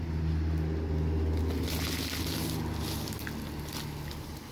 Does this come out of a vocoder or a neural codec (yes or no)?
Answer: no